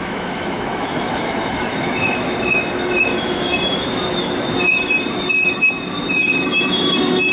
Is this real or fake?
fake